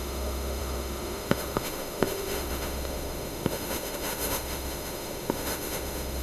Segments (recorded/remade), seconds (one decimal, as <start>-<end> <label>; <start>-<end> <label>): 0.0-6.2 remade